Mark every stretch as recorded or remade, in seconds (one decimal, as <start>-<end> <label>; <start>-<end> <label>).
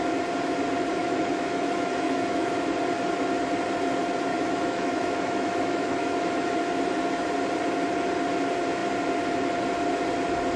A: 0.0-1.0 recorded; 1.0-2.5 remade; 2.5-4.3 recorded; 4.3-6.6 remade; 6.6-10.6 recorded